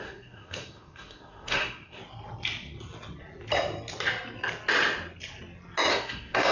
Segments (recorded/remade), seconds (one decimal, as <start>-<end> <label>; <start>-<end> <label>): 0.0-2.0 remade; 2.0-5.9 recorded; 5.9-6.5 remade